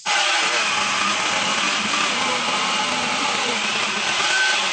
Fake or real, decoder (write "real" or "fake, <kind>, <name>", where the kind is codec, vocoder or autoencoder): real